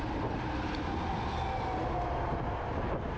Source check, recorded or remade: recorded